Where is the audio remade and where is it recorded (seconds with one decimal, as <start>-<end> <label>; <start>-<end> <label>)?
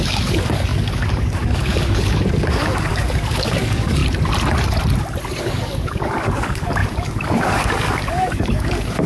0.0-4.0 remade; 4.0-5.4 recorded; 5.4-9.1 remade